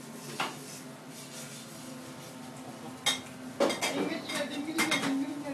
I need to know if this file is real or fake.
real